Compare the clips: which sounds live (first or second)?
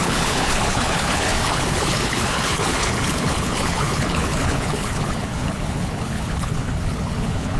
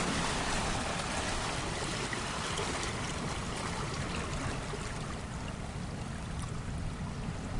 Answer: second